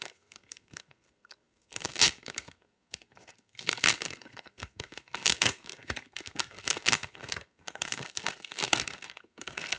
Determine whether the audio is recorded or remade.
remade